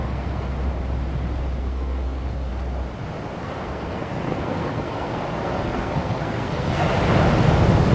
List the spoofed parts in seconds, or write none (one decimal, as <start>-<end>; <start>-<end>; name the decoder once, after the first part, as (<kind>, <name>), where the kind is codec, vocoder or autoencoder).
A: 0.0-0.5 (codec, SNAC); 1.6-2.5; 3.4-7.0